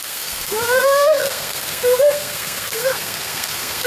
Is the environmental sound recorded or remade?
remade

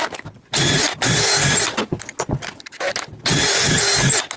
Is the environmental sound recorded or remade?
recorded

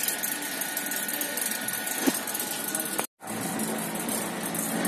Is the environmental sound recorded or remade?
recorded